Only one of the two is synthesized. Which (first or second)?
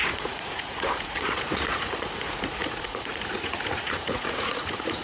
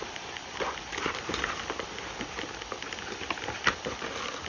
first